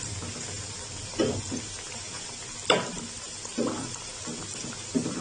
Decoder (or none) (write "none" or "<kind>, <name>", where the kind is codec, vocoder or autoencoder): none